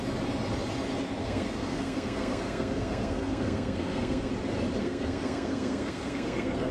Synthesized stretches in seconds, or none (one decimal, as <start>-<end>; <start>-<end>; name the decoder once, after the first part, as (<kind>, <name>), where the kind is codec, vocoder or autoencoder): 1.2-4.3 (codec, SNAC); 4.8-6.7